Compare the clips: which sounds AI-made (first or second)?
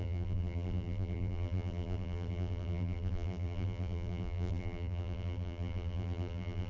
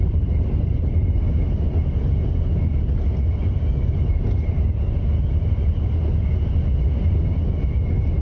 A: first